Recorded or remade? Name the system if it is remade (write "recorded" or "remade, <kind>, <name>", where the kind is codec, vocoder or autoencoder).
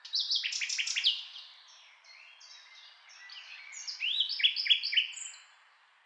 recorded